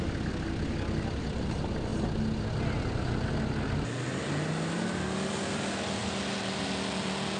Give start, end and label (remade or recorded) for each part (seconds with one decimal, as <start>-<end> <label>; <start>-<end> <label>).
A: 0.0-7.4 recorded